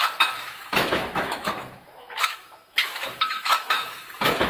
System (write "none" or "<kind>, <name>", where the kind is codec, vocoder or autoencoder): autoencoder, DAC-VAE